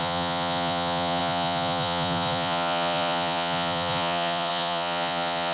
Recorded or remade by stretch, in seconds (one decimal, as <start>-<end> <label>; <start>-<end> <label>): 0.0-5.5 remade